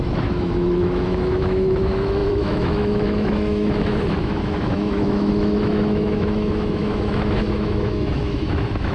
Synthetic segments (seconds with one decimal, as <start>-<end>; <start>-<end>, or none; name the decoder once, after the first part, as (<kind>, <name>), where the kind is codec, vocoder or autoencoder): 0.0-8.9 (autoencoder, DAC-VAE)